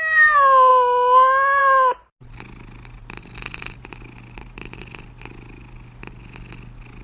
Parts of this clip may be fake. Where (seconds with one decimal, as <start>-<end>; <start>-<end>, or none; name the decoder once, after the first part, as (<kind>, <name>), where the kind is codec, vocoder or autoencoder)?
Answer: none